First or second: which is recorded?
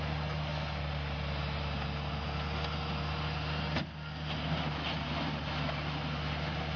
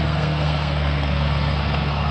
first